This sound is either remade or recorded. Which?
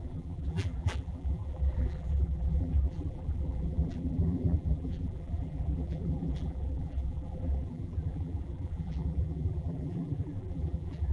remade